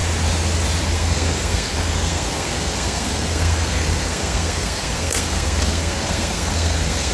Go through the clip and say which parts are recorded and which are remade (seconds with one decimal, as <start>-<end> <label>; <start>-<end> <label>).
0.0-0.8 recorded; 0.8-7.1 remade